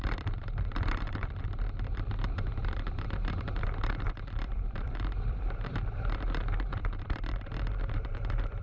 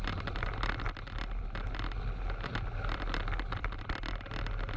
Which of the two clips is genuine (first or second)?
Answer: second